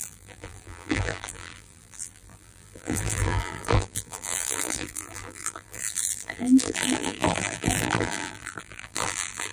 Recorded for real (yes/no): no